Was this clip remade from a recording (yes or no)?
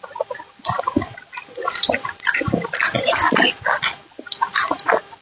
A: no